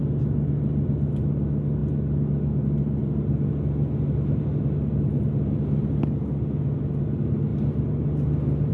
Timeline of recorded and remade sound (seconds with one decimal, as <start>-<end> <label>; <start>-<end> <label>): 0.0-8.7 recorded

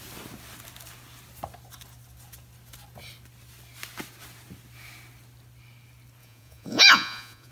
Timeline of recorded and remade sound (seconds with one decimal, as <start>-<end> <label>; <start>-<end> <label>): 0.0-6.2 recorded; 6.2-7.5 remade

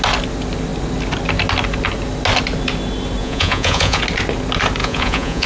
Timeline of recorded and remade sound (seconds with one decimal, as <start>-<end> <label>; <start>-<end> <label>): 0.0-3.2 recorded; 3.2-4.0 remade; 4.0-4.8 recorded; 4.8-5.5 remade